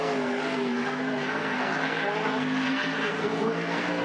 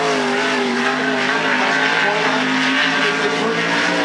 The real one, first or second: second